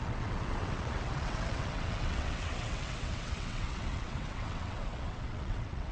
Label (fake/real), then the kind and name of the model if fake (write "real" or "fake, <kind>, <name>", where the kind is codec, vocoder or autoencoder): fake, vocoder, WaveNeXt